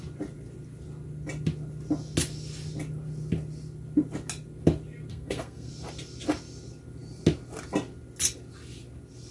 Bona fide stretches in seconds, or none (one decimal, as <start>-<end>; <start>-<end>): 0.0-5.1; 5.7-9.3